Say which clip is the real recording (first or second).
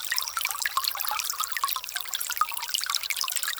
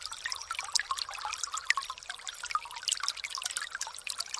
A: second